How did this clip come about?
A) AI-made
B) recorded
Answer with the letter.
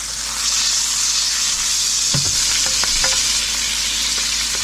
B